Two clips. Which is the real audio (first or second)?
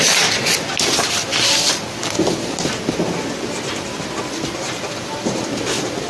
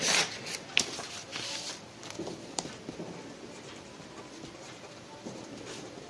first